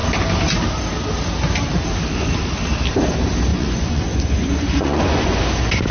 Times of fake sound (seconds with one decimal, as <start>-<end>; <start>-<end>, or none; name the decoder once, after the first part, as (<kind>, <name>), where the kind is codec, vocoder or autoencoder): 3.5-5.4 (vocoder, Vocos)